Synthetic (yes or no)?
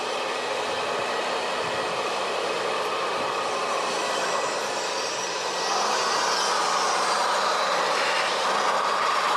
no